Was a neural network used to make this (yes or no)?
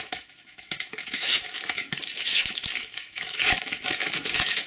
yes